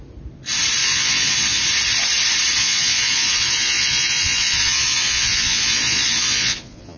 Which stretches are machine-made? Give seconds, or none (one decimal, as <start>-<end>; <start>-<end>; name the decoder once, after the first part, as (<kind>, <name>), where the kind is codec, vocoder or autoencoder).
0.8-1.6 (vocoder, Vocos); 2.6-7.0